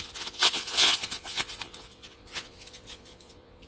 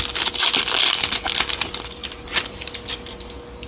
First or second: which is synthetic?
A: first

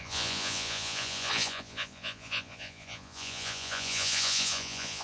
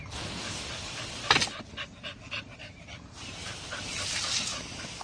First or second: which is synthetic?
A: first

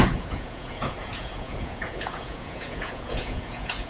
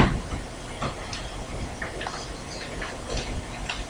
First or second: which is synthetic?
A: first